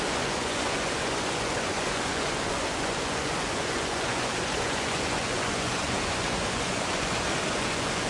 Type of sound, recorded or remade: remade